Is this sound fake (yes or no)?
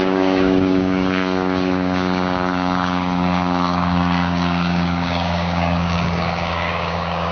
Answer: yes